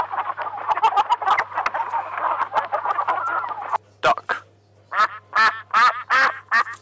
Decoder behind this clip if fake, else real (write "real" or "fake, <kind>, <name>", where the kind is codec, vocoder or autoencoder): real